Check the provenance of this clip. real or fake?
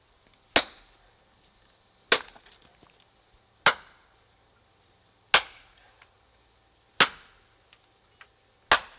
real